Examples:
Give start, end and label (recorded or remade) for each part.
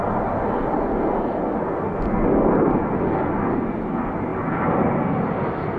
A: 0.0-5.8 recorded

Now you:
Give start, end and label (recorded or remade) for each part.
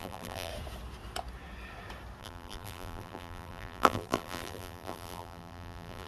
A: 0.0-0.5 remade; 0.5-2.2 recorded; 2.2-6.1 remade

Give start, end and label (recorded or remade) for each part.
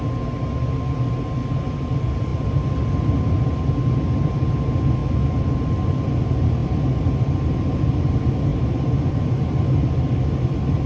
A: 0.0-2.3 recorded; 2.3-3.5 remade; 3.5-5.0 recorded; 5.0-5.7 remade; 5.7-10.9 recorded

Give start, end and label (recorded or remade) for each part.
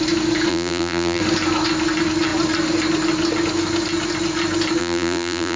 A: 0.0-0.5 recorded; 0.5-1.2 remade; 1.2-4.8 recorded; 4.8-5.6 remade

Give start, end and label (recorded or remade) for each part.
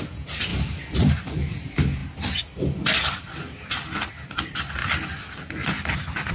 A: 0.0-6.3 recorded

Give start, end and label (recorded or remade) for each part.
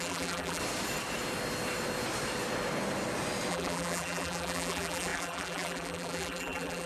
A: 0.0-0.6 remade; 0.6-3.5 recorded; 3.5-6.9 remade